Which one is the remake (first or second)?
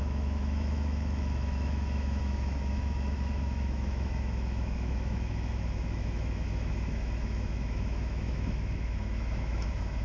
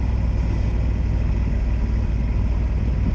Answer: first